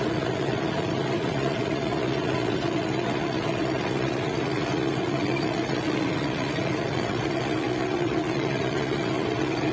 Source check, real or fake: fake